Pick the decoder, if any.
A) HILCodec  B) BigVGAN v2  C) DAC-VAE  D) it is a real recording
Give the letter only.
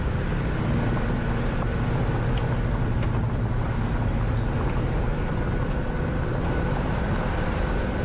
D